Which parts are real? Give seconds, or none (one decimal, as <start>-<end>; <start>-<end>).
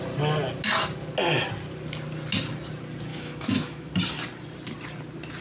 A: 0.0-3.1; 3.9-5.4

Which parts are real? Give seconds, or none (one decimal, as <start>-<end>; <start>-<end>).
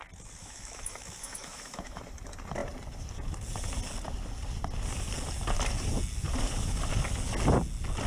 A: 0.0-0.4; 2.0-8.1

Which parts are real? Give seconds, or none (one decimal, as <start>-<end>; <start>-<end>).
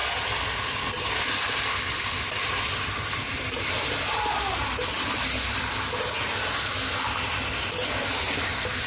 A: 0.0-8.9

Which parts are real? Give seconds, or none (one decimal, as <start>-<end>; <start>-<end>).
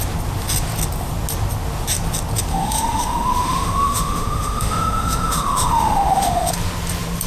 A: 0.0-2.5; 6.5-7.3